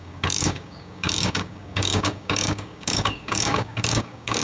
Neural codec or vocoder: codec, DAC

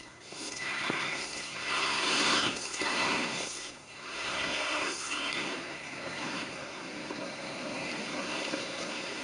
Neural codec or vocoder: codec, SNAC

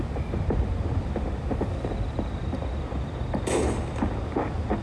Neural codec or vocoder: none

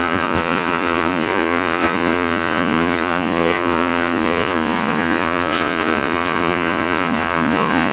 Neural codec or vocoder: vocoder, Vocos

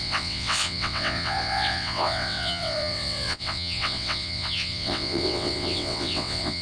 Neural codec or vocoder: vocoder, WaveNeXt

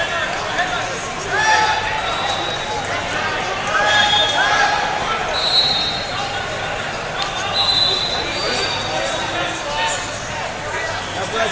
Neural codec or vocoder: none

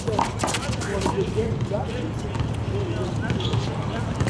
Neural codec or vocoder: none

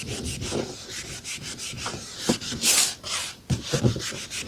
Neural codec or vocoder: none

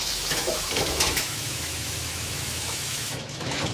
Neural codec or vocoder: autoencoder, DAC-VAE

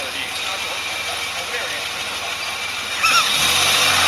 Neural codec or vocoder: none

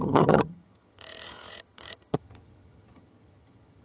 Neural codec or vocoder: vocoder, HiFi-GAN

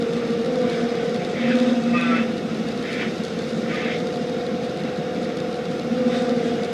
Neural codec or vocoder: vocoder, BigVGAN v2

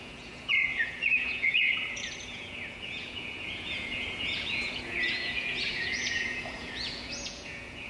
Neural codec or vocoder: vocoder, Vocos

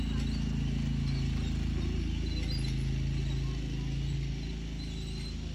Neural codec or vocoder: none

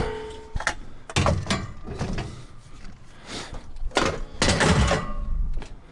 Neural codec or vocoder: none